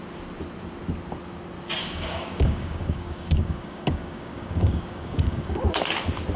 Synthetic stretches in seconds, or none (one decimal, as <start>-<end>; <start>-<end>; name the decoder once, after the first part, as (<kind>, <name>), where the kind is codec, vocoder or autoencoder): 1.8-5.6 (codec, DAC)